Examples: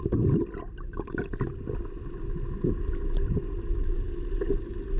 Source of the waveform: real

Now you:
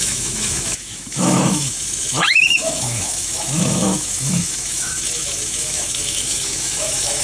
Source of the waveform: fake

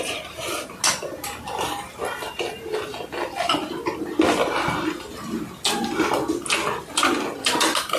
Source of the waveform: real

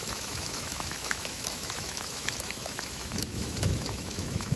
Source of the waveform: fake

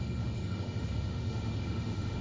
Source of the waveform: fake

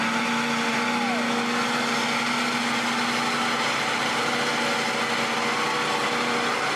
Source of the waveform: real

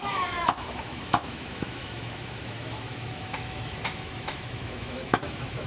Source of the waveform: fake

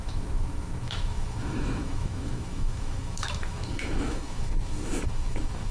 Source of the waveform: fake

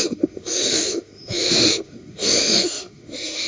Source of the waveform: fake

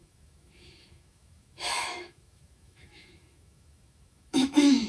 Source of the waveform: fake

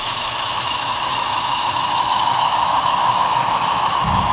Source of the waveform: fake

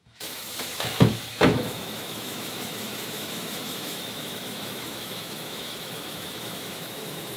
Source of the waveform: fake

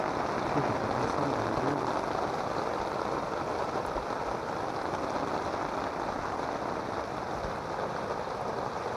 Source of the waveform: real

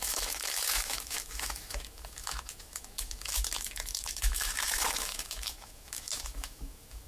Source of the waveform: fake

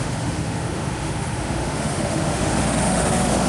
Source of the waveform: fake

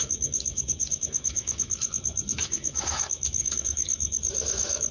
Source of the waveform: fake